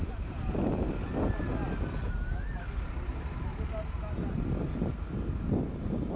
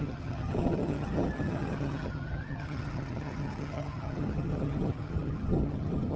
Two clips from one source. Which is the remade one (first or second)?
second